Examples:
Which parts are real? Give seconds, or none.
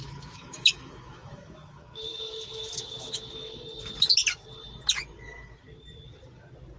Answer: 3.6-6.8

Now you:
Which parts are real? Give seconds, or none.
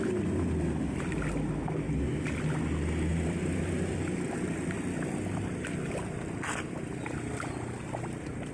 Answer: 0.0-3.1; 6.7-8.5